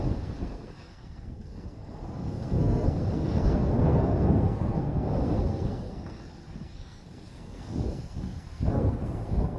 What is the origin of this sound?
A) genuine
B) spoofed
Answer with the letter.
B